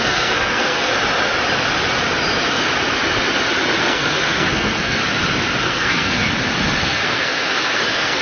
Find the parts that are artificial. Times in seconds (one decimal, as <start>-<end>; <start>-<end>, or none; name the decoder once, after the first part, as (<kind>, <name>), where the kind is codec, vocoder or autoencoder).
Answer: 0.0-0.9 (codec, SNAC); 3.8-5.0; 5.6-6.2; 6.8-8.2